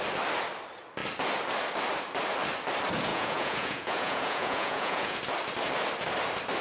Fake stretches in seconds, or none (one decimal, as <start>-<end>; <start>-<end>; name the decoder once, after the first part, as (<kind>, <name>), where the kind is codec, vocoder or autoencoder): 3.1-5.2 (vocoder, Vocos)